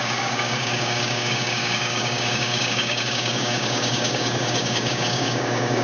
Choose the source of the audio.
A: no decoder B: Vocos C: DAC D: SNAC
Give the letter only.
C